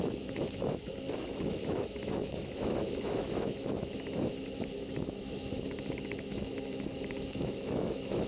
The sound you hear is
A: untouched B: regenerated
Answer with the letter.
B